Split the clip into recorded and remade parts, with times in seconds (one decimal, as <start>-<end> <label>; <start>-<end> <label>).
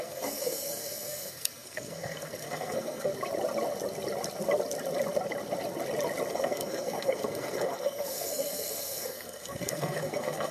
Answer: 0.0-3.1 remade; 3.1-6.3 recorded; 6.3-10.5 remade